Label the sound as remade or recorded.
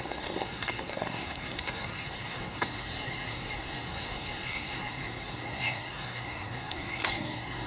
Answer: remade